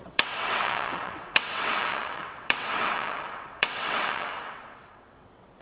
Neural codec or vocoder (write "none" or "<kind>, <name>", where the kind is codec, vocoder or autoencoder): vocoder, WaveNeXt